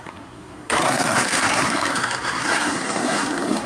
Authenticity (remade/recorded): remade